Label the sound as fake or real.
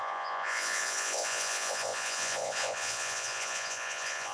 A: fake